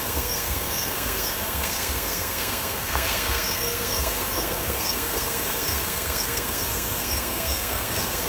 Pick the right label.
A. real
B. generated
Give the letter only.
B